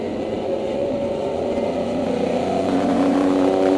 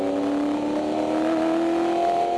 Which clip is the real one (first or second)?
second